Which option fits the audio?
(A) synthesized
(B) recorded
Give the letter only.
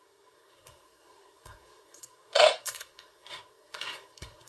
A